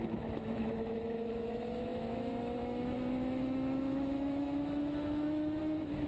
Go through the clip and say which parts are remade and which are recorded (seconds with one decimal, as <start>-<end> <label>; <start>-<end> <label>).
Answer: 0.0-6.1 remade